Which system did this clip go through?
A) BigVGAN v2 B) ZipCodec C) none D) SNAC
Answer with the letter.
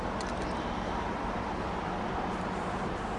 C